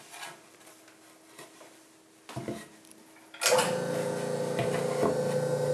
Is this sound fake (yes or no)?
no